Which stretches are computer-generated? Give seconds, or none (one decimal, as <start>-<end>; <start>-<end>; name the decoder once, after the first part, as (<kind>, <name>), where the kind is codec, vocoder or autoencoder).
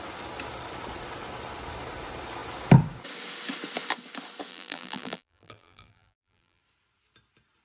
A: 4.5-6.6 (vocoder, BigVGAN v2)